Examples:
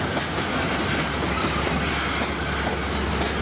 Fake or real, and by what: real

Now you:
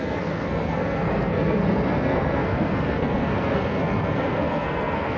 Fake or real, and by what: fake, codec, SNAC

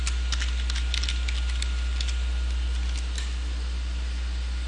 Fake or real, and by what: real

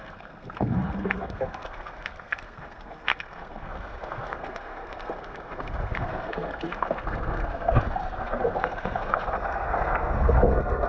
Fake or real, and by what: fake, codec, SNAC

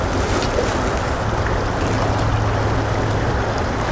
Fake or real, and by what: real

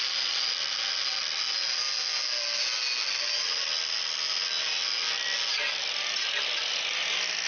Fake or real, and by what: real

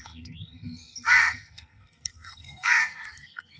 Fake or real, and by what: fake, codec, SNAC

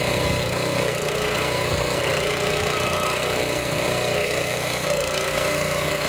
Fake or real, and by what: fake, codec, SNAC